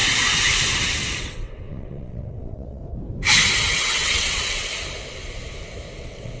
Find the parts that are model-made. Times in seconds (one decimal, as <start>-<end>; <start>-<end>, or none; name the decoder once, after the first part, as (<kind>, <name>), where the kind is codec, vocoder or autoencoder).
1.2-2.8 (vocoder, WaveNeXt); 3.6-4.7; 6.0-6.4